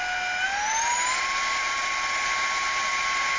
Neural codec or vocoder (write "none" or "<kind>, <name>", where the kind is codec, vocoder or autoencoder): none